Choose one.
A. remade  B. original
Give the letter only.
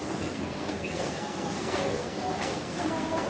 A